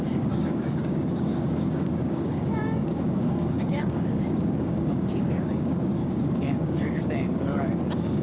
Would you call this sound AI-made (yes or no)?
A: yes